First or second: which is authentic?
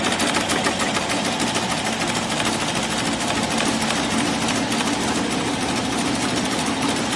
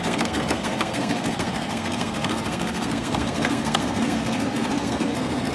first